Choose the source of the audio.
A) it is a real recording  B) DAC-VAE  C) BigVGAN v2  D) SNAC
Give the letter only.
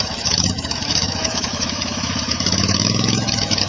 B